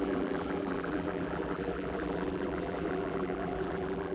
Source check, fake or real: fake